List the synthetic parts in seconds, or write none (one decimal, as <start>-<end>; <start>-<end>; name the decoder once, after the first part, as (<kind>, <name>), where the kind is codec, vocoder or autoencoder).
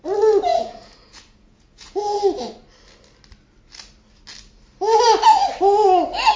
0.5-2.2 (vocoder, Vocos)